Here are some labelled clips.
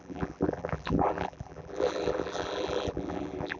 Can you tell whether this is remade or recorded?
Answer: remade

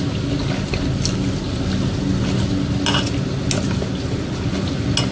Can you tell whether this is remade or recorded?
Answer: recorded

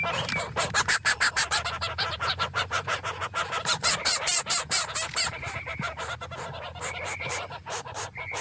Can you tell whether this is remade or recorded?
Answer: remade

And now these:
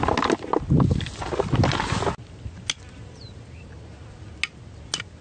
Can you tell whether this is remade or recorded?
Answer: recorded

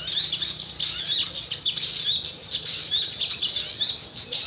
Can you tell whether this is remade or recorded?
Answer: recorded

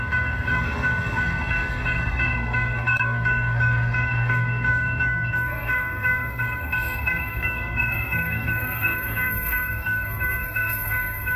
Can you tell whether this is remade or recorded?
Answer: remade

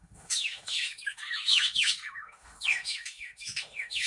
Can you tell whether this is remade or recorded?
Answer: remade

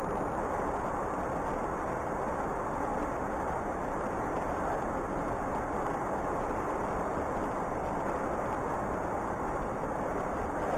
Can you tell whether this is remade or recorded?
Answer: recorded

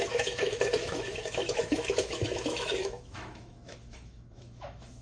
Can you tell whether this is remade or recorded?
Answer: remade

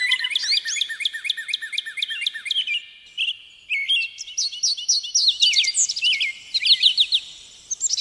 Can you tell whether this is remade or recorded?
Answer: recorded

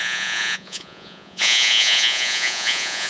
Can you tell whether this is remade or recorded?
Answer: remade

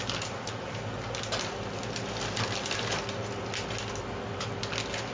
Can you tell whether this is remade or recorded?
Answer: recorded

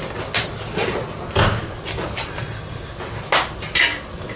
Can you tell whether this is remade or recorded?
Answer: recorded